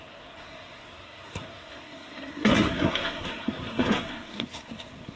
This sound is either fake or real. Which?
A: fake